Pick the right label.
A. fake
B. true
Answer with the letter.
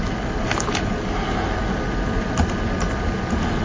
B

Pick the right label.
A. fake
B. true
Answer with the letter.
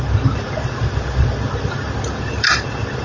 B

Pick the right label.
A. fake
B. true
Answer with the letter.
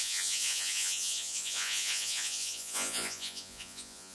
A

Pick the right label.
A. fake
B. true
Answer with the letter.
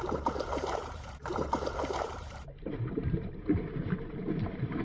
A